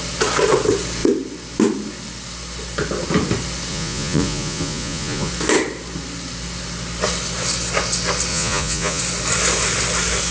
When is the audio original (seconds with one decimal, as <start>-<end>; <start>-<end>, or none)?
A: 0.0-3.7; 5.3-8.3; 9.0-10.3